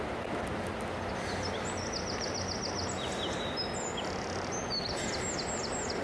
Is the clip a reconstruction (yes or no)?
no